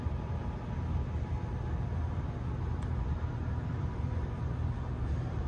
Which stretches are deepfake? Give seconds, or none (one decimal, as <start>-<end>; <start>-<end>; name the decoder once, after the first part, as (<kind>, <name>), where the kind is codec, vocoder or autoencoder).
0.0-0.4 (vocoder, BigVGAN v2); 3.7-5.5